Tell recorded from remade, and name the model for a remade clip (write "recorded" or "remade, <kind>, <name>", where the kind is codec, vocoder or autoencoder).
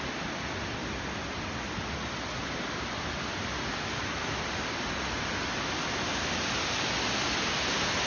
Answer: recorded